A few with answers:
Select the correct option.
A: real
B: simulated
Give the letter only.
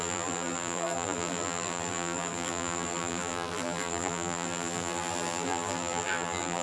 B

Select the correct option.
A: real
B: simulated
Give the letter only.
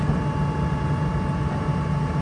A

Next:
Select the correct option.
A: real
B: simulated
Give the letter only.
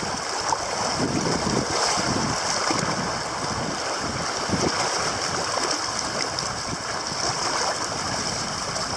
A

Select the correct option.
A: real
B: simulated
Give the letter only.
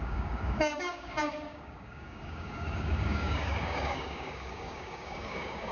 B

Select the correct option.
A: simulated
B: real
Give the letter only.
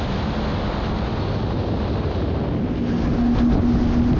B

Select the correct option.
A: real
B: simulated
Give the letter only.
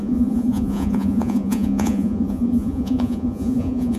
B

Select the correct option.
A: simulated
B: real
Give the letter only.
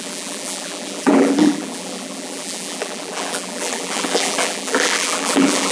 A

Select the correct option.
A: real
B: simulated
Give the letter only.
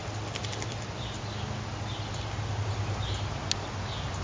A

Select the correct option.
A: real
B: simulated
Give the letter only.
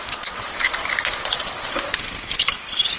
A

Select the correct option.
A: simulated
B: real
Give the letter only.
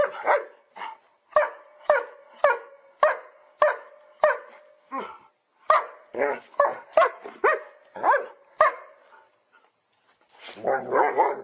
B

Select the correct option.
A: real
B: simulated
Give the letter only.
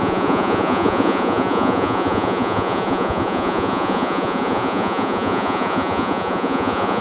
B